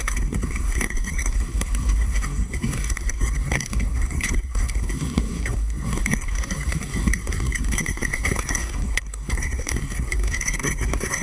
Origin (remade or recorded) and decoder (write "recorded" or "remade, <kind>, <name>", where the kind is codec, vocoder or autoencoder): remade, codec, SNAC